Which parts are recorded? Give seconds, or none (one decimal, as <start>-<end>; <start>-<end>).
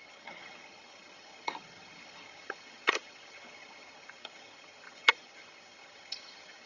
none